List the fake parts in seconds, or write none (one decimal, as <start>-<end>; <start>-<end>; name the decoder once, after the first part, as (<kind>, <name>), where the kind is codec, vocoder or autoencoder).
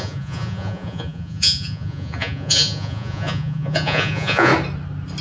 0.0-4.5 (vocoder, Vocos)